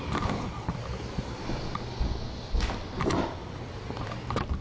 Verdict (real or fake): real